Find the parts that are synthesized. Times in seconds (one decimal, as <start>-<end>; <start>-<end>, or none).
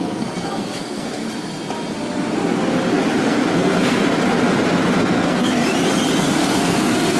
0.0-1.2; 3.2-4.1; 4.9-5.6; 6.2-7.2